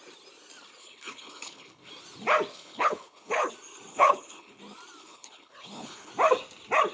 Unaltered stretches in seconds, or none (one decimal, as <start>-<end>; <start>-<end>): 0.0-0.8; 1.9-2.5; 3.5-3.9; 4.6-5.0; 6.1-6.9